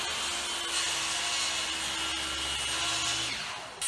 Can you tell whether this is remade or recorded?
recorded